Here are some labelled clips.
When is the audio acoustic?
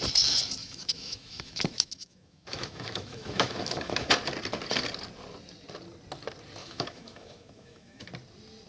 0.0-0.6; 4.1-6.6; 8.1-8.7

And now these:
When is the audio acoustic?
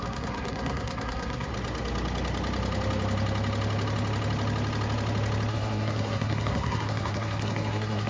1.5-5.5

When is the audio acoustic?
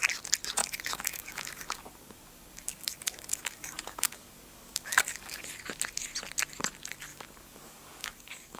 0.0-0.6; 5.4-7.1